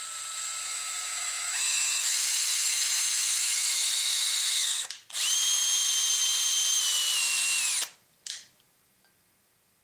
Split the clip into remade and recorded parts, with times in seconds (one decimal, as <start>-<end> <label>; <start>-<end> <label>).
0.0-0.6 recorded; 0.6-4.9 remade; 4.9-9.8 recorded